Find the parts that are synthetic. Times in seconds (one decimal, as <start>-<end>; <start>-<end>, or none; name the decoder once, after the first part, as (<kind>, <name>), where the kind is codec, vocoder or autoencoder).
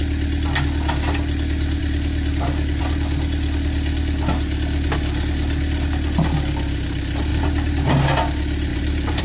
1.8-2.8 (vocoder, BigVGAN v2); 7.3-7.9; 8.7-9.2